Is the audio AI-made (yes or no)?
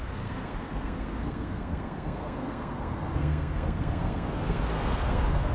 yes